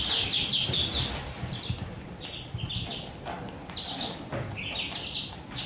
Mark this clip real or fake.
real